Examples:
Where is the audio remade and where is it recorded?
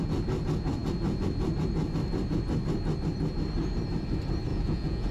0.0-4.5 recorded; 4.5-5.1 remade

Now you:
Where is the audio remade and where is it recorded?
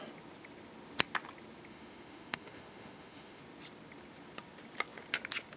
0.0-1.7 recorded; 1.7-3.4 remade; 3.4-5.6 recorded